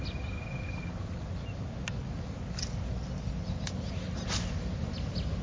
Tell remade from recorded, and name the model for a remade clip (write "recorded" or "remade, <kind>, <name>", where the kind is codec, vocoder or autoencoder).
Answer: recorded